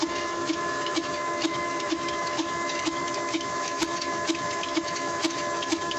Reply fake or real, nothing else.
fake